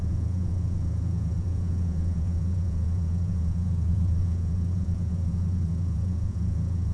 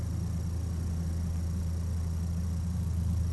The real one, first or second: second